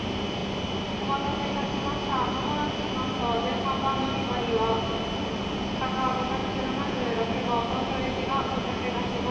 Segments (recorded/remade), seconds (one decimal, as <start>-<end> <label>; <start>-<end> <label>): 0.0-6.4 recorded; 6.4-8.9 remade; 8.9-9.3 recorded